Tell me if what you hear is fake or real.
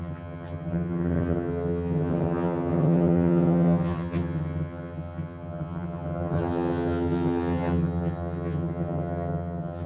fake